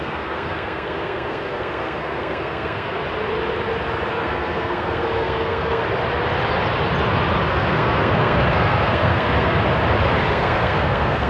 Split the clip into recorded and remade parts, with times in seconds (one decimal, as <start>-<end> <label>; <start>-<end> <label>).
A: 0.0-3.0 remade; 3.0-4.1 recorded; 4.1-5.8 remade; 5.8-7.5 recorded; 7.5-9.6 remade; 9.6-10.3 recorded; 10.3-11.3 remade